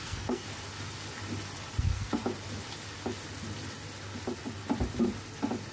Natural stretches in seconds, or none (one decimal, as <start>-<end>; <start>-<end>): 0.5-1.8; 2.2-5.7